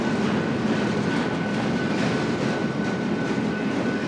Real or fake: real